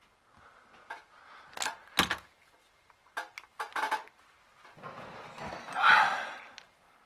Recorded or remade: recorded